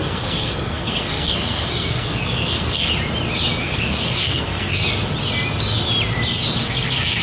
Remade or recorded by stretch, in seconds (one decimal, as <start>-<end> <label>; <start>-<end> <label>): 0.0-2.9 remade; 2.9-3.6 recorded; 3.6-4.8 remade; 4.8-6.6 recorded; 6.6-7.2 remade